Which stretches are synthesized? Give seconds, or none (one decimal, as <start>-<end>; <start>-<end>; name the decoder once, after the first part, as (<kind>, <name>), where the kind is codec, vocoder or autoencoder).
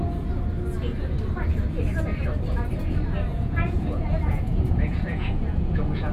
3.3-6.1 (vocoder, Vocos)